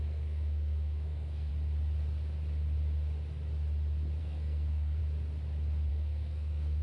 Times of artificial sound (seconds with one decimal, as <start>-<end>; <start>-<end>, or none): 0.0-1.5; 4.2-5.0; 5.9-6.8